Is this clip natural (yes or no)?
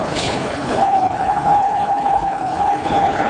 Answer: no